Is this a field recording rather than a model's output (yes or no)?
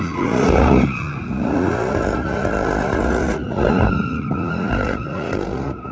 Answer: no